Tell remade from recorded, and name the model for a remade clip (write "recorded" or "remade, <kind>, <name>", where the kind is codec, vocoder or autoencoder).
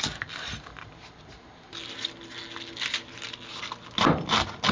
recorded